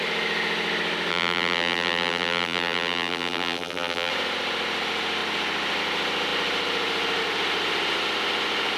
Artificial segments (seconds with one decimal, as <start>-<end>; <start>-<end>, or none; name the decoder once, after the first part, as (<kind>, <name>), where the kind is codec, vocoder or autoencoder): 1.1-4.1 (vocoder, BigVGAN v2)